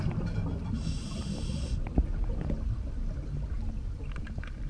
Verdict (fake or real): real